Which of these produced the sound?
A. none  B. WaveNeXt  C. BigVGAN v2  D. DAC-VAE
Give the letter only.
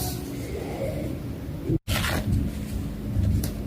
A